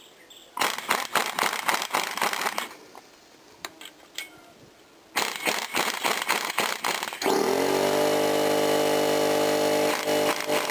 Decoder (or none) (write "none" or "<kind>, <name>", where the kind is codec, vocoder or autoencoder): none